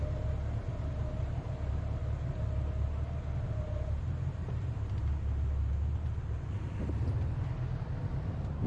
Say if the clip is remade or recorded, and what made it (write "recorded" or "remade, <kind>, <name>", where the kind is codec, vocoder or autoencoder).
recorded